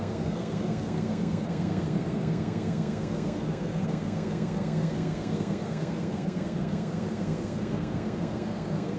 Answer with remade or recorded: remade